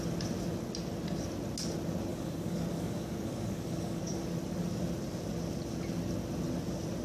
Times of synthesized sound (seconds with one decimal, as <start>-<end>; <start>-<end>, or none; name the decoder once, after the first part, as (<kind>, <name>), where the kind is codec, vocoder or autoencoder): 2.1-4.0 (codec, DAC)